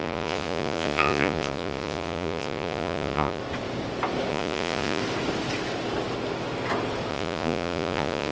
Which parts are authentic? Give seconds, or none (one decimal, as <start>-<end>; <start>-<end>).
3.4-4.3; 5.0-7.1